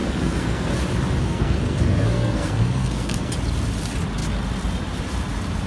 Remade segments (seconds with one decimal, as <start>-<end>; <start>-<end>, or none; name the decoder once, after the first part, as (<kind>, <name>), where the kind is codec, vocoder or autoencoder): 0.0-0.7 (codec, SNAC); 1.2-3.3